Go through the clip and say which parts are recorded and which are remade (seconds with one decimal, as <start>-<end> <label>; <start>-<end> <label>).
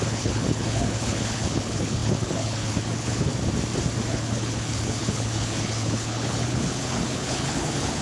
0.0-3.3 remade; 3.3-4.1 recorded; 4.1-8.0 remade